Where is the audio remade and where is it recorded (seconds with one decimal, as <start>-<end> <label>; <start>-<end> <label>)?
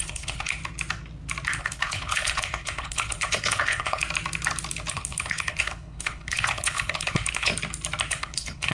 0.0-0.6 remade; 0.6-1.6 recorded; 1.6-4.0 remade; 4.0-4.9 recorded; 4.9-7.5 remade; 7.5-8.1 recorded; 8.1-8.7 remade